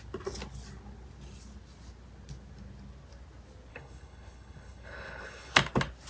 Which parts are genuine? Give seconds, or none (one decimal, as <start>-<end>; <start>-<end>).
0.0-3.7; 5.5-6.1